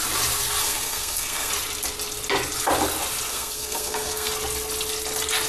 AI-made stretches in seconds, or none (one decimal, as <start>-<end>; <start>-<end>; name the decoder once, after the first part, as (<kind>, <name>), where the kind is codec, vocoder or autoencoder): 0.6-1.5 (codec, SNAC); 3.3-4.3